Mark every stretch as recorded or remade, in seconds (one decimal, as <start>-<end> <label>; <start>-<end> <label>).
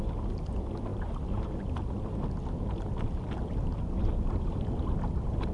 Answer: 0.0-5.5 recorded